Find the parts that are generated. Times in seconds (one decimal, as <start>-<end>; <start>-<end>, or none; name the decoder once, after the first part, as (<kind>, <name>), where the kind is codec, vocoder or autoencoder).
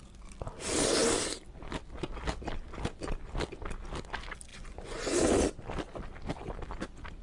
4.5-5.2 (vocoder, Vocos)